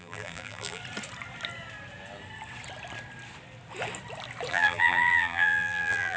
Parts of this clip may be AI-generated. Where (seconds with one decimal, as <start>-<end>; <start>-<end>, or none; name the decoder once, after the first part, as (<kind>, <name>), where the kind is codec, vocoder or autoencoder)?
0.0-0.8 (vocoder, BigVGAN v2); 4.5-6.2